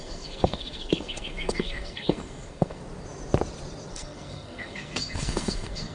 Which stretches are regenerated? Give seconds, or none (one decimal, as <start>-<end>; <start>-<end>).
0.0-2.8; 3.9-5.9

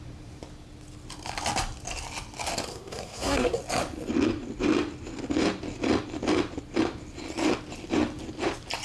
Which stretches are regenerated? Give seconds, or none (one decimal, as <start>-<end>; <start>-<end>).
2.7-3.6

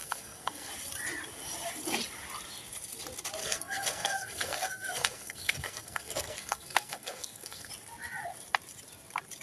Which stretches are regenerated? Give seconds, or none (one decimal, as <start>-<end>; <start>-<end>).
0.0-0.7; 3.4-7.7

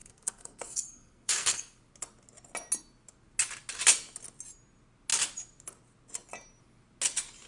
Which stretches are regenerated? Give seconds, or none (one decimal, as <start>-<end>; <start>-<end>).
0.0-1.8

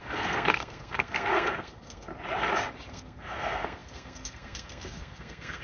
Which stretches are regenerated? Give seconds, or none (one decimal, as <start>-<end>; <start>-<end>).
0.0-2.1; 2.9-5.6

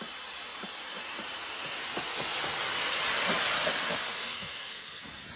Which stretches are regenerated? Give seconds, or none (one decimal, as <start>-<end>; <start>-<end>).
4.0-5.0

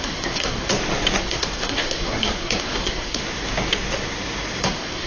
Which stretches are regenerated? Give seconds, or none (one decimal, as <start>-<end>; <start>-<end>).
0.0-0.7; 1.2-3.2; 4.6-5.1